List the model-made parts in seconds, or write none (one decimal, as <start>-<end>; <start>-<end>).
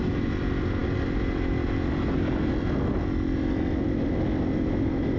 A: none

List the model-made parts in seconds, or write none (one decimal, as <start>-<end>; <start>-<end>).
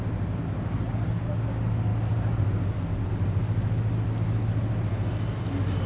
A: none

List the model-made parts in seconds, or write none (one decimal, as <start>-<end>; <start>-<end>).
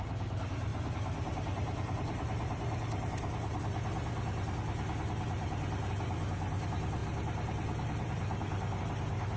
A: none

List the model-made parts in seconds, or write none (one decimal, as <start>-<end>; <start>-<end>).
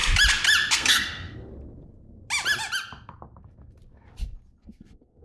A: 0.7-1.5; 4.6-5.2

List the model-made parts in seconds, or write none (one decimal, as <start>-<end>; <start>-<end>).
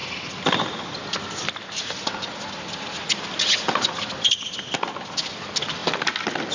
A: none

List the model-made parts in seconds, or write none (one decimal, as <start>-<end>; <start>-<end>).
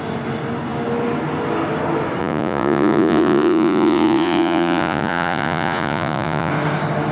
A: 2.2-6.5